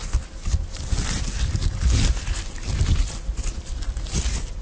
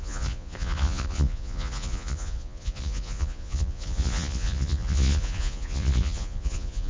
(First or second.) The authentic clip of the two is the first